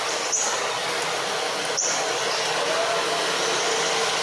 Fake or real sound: real